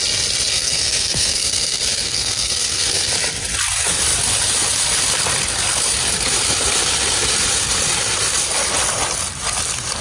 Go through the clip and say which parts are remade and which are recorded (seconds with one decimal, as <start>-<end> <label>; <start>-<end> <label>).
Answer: 0.0-0.5 recorded; 0.5-3.1 remade; 3.1-10.0 recorded